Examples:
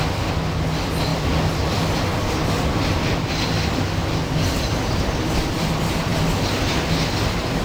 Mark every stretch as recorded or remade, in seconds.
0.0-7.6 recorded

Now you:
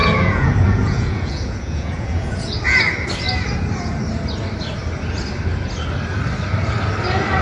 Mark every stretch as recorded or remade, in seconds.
0.0-2.8 remade; 2.8-7.4 recorded